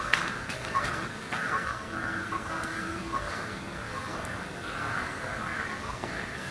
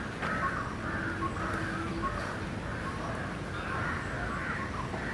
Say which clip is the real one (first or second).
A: second